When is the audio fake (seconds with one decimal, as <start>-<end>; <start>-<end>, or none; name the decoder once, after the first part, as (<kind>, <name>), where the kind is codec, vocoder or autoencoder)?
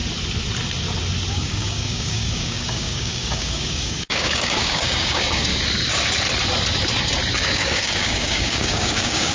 1.3-5.5 (codec, DAC); 7.4-9.3